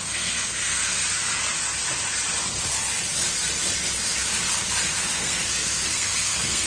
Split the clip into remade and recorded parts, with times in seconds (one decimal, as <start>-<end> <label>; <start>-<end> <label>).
0.0-1.0 remade; 1.0-5.0 recorded; 5.0-6.7 remade